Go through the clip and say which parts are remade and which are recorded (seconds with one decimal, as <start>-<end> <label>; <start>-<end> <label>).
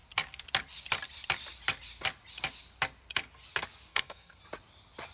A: 0.0-3.9 recorded; 3.9-4.4 remade; 4.4-5.1 recorded